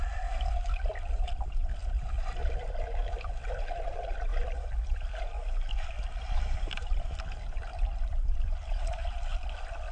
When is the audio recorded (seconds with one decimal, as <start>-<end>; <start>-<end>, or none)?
none